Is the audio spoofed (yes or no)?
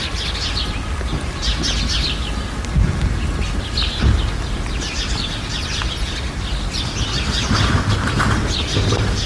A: no